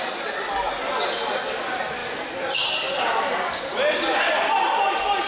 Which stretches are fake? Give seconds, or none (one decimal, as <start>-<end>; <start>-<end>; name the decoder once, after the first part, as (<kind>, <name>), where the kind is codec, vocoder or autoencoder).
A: none